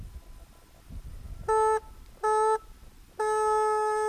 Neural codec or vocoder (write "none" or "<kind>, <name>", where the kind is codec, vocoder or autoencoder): none